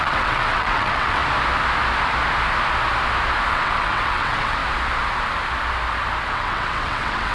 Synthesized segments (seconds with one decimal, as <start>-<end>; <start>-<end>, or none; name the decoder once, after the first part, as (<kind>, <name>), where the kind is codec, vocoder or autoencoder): 0.0-1.2 (vocoder, WaveNeXt); 3.5-4.6; 6.3-7.3